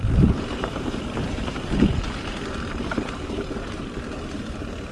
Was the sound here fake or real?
fake